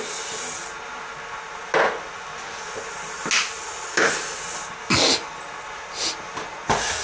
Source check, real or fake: real